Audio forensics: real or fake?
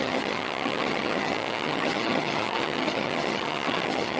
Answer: fake